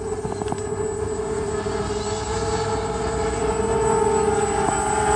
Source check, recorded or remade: recorded